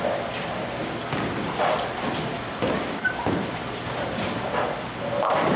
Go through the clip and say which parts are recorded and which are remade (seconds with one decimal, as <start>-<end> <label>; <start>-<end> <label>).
0.0-5.6 recorded